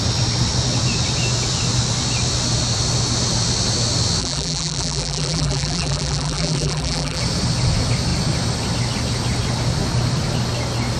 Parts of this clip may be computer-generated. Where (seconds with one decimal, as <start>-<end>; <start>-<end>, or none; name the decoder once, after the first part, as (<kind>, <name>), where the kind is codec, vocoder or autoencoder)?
4.2-7.2 (vocoder, BigVGAN v2)